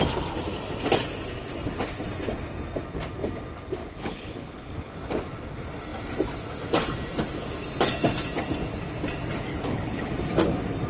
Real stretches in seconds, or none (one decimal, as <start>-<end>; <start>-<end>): 0.0-3.8; 4.9-9.5; 10.1-10.9